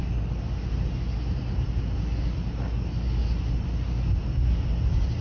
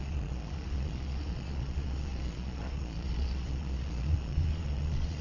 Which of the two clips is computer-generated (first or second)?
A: second